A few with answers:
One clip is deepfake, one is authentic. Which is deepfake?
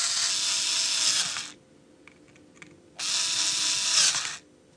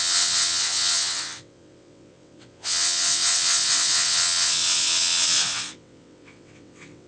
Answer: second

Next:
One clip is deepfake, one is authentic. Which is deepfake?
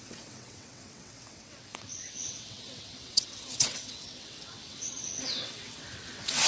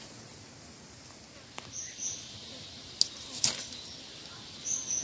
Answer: first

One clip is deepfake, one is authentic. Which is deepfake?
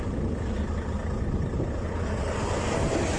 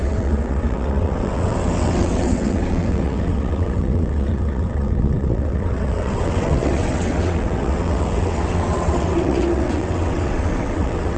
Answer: second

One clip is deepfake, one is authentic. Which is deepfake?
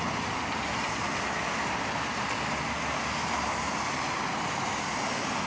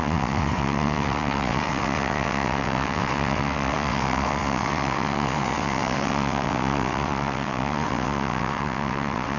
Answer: second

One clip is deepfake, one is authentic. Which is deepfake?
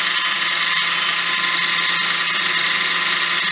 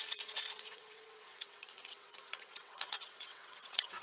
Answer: second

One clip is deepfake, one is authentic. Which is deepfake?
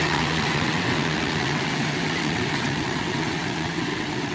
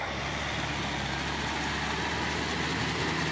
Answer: first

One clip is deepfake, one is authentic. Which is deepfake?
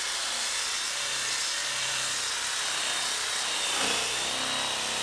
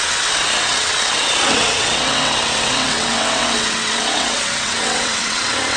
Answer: second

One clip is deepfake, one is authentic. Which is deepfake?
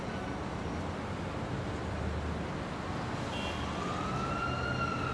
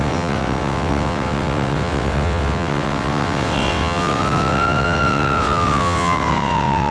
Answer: second